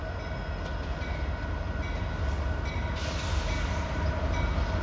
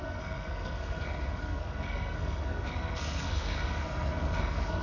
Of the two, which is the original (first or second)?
first